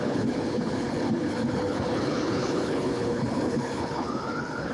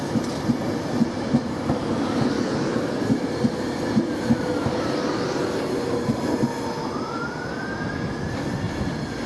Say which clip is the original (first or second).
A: second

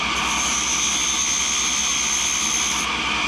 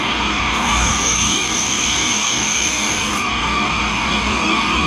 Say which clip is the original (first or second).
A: first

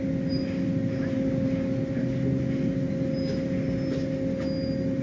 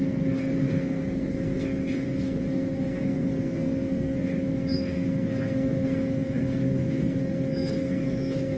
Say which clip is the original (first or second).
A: first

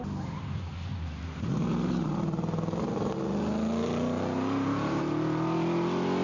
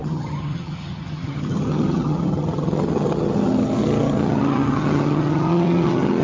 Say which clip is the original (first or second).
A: first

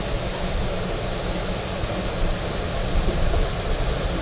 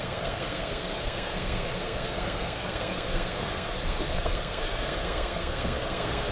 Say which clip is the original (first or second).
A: first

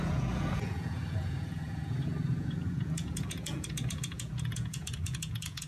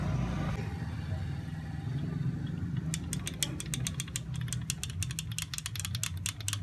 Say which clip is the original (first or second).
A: second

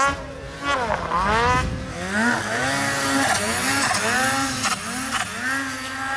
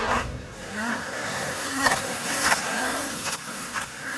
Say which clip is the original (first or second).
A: first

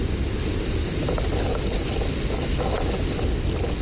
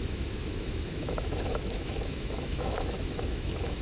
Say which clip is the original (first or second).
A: first